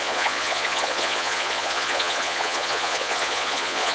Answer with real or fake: fake